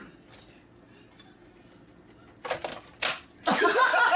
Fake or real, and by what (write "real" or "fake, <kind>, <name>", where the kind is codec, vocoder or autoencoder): real